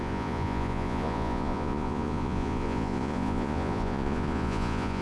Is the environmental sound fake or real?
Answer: fake